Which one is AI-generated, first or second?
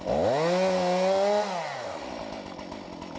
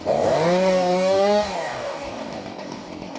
second